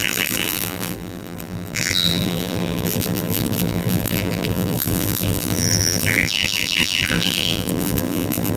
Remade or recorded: remade